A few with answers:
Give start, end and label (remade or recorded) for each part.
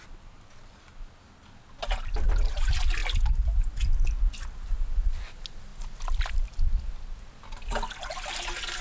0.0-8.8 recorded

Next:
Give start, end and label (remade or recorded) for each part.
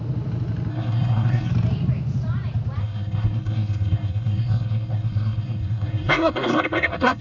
0.0-0.7 recorded; 0.7-1.5 remade; 1.5-2.8 recorded; 2.8-7.2 remade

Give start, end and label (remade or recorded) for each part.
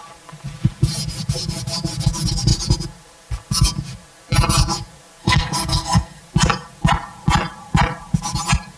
0.0-5.2 recorded; 5.2-6.2 remade; 6.2-8.8 recorded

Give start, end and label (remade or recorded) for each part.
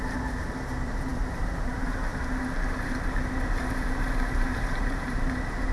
0.0-2.1 remade; 2.1-2.8 recorded; 2.8-5.7 remade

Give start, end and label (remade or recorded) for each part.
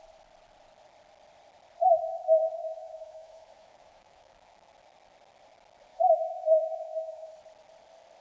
0.0-2.6 recorded; 2.6-4.7 remade; 4.7-5.9 recorded; 5.9-7.3 remade; 7.3-8.2 recorded